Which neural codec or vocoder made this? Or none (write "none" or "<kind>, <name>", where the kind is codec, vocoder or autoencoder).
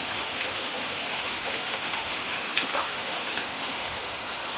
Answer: autoencoder, DAC-VAE